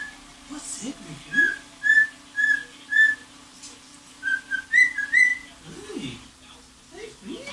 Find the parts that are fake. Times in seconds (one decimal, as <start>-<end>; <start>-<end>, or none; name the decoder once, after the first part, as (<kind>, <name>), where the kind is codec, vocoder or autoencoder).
none